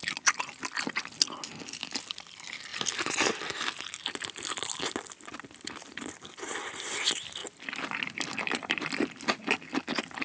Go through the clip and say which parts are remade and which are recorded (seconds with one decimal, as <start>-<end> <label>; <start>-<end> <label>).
0.0-10.2 recorded